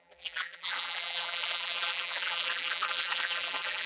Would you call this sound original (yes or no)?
no